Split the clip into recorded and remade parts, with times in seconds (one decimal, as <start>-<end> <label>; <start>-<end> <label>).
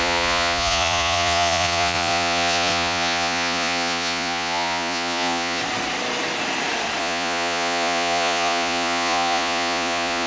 0.0-5.6 remade; 5.6-7.0 recorded; 7.0-10.3 remade